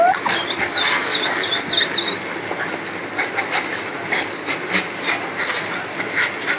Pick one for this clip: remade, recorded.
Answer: recorded